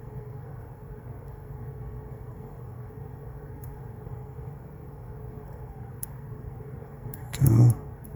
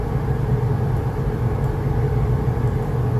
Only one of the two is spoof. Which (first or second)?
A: first